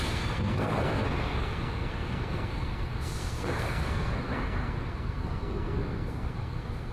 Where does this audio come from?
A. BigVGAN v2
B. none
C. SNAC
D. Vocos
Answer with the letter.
C